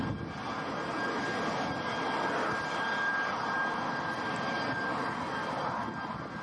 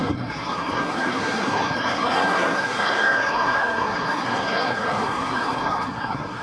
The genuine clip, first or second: first